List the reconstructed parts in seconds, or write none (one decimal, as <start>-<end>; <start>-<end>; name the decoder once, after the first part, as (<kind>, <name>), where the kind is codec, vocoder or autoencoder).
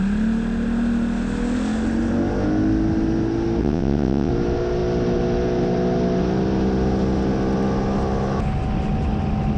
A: 3.6-4.3 (vocoder, WaveNeXt)